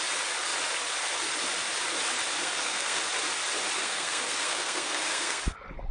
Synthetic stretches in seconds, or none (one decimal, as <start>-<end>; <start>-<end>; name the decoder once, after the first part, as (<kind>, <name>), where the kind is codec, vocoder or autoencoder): 2.4-3.0 (codec, SNAC); 3.8-5.4